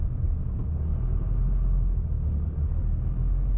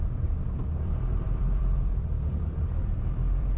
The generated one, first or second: second